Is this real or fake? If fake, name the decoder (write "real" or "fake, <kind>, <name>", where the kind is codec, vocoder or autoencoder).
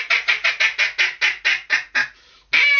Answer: real